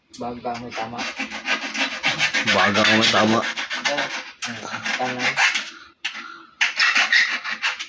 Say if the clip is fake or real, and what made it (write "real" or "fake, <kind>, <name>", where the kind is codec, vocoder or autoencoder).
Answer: real